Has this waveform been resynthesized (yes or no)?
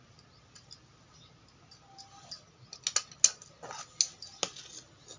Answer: no